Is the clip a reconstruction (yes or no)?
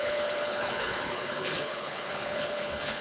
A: yes